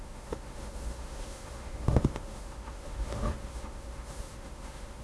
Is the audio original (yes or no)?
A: no